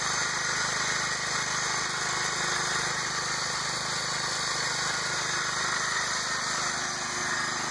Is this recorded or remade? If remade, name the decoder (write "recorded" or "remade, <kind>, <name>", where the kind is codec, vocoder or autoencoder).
recorded